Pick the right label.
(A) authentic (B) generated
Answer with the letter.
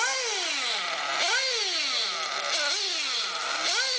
A